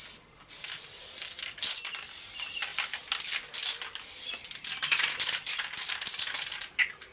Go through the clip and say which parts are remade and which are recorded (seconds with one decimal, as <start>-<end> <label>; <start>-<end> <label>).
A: 0.0-7.1 recorded